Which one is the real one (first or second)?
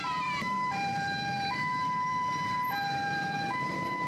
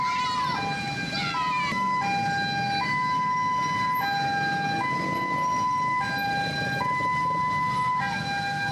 second